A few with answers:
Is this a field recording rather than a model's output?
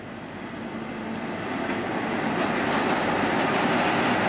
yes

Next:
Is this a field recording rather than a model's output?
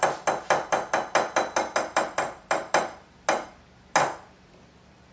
yes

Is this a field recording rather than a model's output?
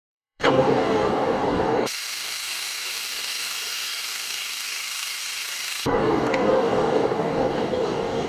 no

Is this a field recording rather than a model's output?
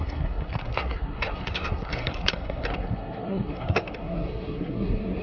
no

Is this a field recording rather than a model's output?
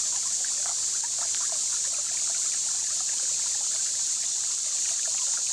yes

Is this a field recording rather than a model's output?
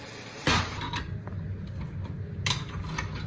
yes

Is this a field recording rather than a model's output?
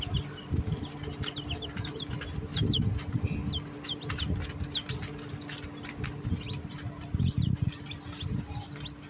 yes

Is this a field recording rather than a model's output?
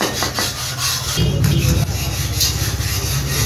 yes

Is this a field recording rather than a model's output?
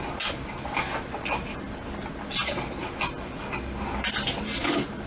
yes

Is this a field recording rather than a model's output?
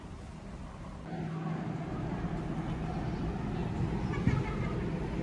yes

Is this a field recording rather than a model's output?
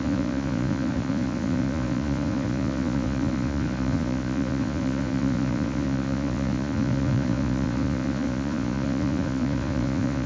no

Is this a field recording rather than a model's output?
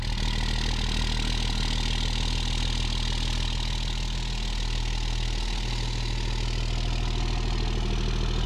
yes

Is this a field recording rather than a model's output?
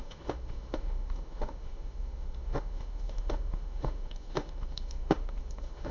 no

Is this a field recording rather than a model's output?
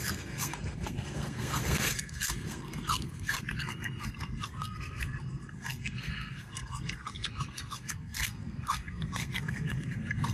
no